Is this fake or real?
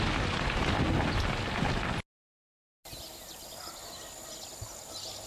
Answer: real